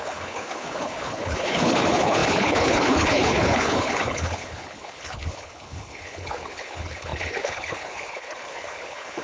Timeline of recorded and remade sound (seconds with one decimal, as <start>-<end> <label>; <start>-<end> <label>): 0.0-9.2 remade